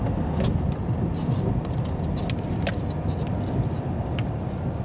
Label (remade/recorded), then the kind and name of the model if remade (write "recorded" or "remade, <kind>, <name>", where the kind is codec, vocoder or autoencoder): recorded